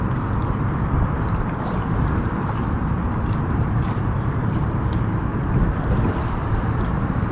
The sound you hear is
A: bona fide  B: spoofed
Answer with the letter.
B